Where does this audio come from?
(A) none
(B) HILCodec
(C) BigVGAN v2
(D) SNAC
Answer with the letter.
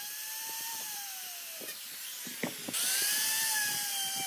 C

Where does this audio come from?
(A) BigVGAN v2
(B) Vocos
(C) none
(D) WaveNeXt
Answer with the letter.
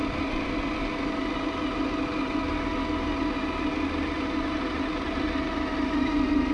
C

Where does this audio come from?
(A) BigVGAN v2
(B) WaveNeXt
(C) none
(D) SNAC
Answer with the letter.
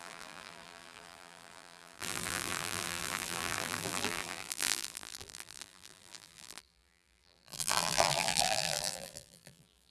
A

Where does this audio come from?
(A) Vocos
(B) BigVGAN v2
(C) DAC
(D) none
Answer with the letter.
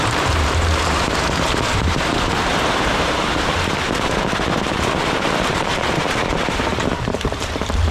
B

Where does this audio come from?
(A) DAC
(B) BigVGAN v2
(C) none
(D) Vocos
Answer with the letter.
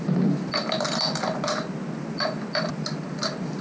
C